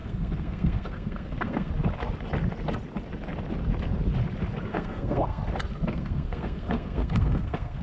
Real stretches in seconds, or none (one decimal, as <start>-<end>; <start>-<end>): 1.7-4.7; 5.4-5.9